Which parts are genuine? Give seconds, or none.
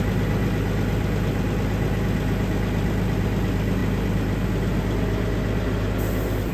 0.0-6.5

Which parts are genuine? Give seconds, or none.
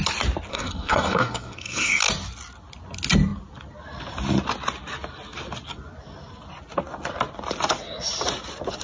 0.0-0.5; 2.0-8.8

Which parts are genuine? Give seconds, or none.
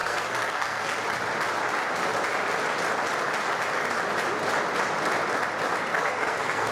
1.0-5.9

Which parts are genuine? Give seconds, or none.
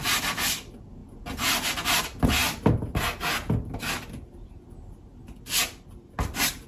0.0-6.7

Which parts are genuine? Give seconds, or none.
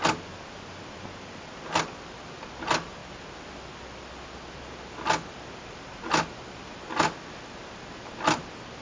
0.0-8.8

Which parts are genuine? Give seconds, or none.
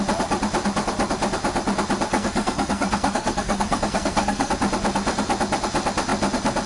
0.0-2.1; 4.5-6.7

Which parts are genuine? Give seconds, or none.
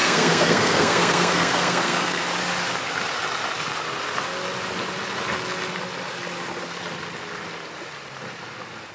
2.2-8.9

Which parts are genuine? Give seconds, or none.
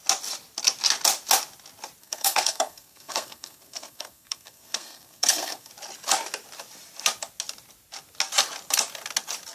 0.0-2.0; 5.7-9.5